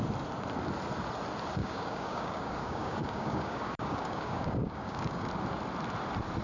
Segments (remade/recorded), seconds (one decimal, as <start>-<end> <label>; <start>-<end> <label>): 0.0-1.6 recorded; 1.6-5.3 remade; 5.3-6.4 recorded